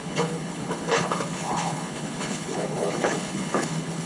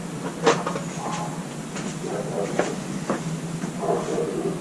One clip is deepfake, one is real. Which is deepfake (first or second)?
first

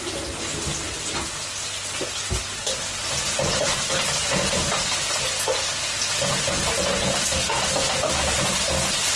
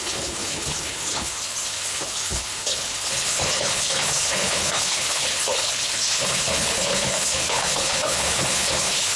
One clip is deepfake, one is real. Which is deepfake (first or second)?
second